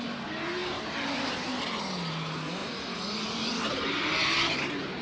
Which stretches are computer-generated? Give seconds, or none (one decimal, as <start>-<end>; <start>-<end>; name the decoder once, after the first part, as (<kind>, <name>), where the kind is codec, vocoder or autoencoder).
none